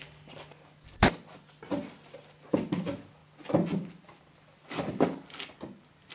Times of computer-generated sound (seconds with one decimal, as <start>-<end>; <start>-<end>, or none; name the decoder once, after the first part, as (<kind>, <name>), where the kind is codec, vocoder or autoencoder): none